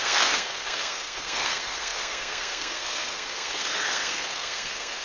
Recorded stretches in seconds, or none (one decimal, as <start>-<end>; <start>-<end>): none